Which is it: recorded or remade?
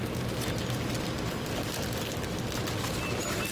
recorded